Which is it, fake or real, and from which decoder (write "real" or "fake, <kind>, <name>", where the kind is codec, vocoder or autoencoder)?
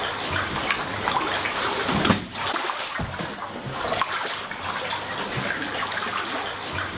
real